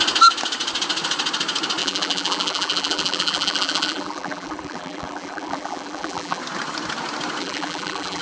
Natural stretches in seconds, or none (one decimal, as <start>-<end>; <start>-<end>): 0.0-1.8; 6.4-7.4